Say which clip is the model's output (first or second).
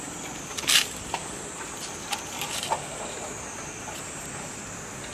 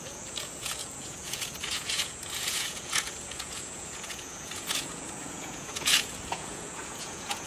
second